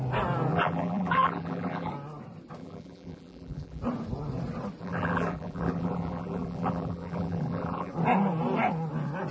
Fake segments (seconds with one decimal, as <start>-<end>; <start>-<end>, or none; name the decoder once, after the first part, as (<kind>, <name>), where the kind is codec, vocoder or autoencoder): 0.5-1.9 (vocoder, BigVGAN v2); 2.6-3.8; 4.8-7.9